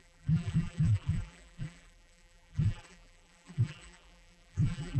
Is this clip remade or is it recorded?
remade